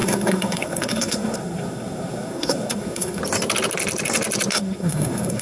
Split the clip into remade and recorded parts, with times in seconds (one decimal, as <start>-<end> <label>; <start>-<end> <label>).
0.0-3.2 remade; 3.2-4.5 recorded; 4.5-5.4 remade